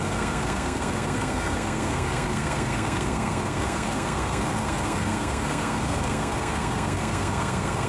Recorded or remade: remade